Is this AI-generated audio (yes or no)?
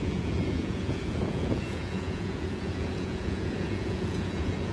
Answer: yes